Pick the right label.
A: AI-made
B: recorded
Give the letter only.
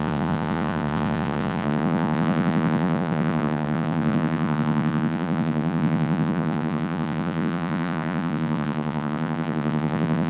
A